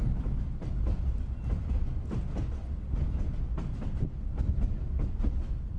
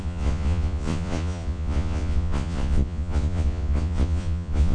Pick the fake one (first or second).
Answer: second